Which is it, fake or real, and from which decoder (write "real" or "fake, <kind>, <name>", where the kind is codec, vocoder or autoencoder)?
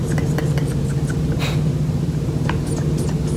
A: real